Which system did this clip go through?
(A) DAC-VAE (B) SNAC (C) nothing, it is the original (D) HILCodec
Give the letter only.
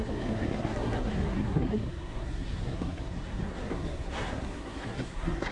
B